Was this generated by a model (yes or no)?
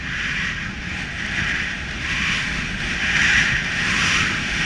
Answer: no